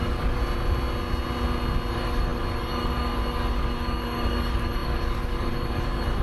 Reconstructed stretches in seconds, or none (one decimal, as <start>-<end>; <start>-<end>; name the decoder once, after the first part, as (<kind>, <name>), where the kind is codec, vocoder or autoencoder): 0.0-0.4 (codec, DAC); 1.9-6.2